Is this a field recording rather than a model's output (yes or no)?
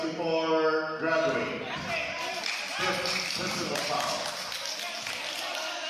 yes